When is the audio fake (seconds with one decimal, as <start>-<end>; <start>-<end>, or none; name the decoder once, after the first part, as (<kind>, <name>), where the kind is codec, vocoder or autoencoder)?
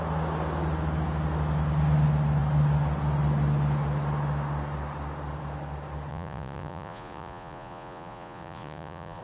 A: 6.1-9.2 (vocoder, Vocos)